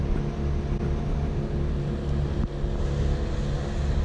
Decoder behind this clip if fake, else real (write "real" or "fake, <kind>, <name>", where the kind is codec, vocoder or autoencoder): real